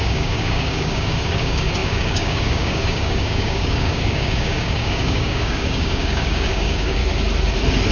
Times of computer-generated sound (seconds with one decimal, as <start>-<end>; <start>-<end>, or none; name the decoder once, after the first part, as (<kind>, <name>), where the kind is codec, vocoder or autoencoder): 0.0-7.0 (codec, DAC)